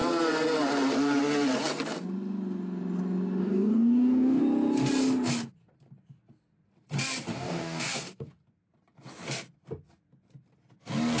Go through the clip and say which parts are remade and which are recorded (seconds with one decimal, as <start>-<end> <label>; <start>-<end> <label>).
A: 0.0-3.4 recorded; 3.4-4.4 remade; 4.4-7.3 recorded; 7.3-8.3 remade; 8.3-11.2 recorded